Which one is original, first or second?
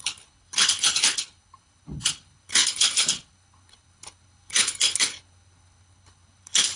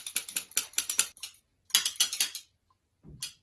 second